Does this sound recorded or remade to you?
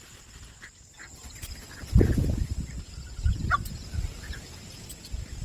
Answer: recorded